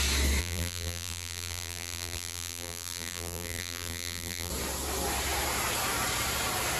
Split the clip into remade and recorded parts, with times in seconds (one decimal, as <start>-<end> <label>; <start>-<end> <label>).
0.0-0.4 recorded; 0.4-4.5 remade; 4.5-6.8 recorded